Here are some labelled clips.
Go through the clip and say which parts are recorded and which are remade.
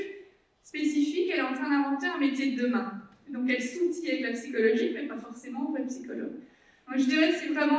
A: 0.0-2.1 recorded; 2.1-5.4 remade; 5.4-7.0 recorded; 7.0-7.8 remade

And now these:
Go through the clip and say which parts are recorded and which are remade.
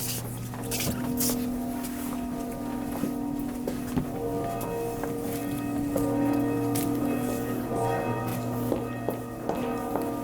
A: 0.0-10.2 recorded